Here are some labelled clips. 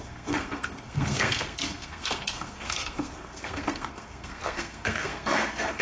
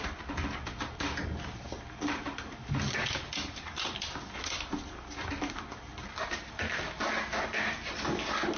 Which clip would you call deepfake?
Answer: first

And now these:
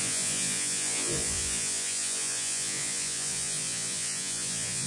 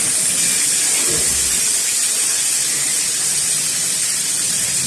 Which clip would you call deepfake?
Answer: first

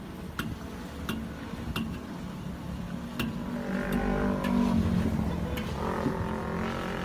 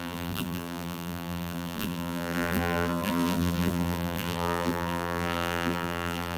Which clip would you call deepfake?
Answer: second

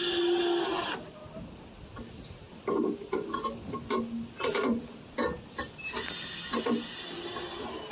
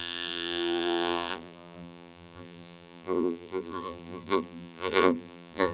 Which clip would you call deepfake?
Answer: second